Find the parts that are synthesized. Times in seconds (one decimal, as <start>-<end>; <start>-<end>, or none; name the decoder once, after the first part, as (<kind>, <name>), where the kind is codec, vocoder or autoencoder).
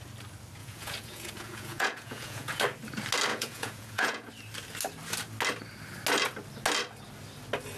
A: 0.6-2.6 (vocoder, Vocos); 3.3-4.3